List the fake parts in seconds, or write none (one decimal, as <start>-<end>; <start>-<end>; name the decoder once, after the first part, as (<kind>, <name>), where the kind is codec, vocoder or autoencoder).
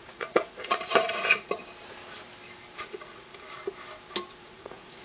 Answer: 0.0-1.6 (vocoder, Vocos); 2.8-3.3; 4.3-5.0